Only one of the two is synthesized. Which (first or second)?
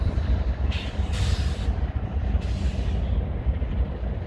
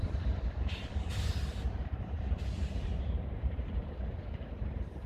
second